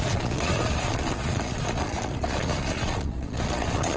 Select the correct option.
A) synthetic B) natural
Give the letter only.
A